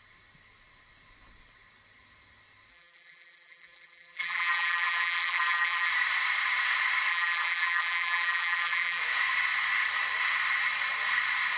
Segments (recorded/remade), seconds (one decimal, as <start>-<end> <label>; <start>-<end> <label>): 0.0-2.7 recorded; 2.7-5.9 remade; 5.9-7.1 recorded; 7.1-9.0 remade; 9.0-11.6 recorded